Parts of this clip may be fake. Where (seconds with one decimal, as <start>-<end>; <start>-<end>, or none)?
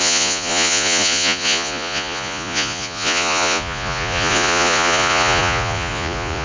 0.0-6.4